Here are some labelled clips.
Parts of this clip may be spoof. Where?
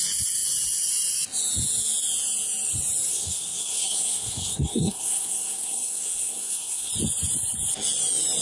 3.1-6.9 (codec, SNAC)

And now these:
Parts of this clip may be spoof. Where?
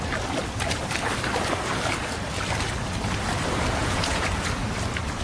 3.8-4.3 (vocoder, Vocos)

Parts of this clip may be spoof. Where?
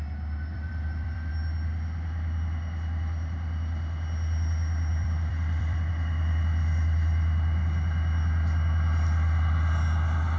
0.5-1.3 (vocoder, BigVGAN v2); 4.9-5.9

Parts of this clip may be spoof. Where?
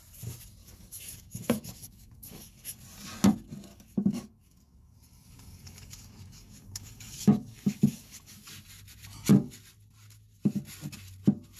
0.6-2.8 (codec, DAC); 3.7-8.5